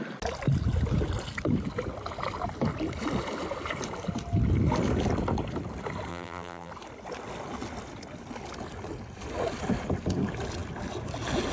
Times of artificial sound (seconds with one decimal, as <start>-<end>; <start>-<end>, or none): 6.1-6.7